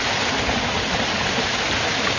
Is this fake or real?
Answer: real